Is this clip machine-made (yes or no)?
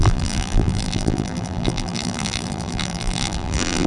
yes